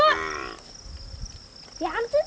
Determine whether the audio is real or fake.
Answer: real